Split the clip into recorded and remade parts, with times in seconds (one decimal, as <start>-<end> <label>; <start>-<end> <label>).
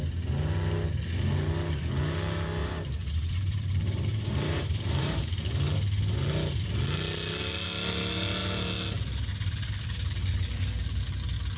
0.0-2.6 recorded; 2.6-5.4 remade; 5.4-11.6 recorded